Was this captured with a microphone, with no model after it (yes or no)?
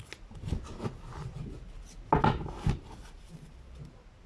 yes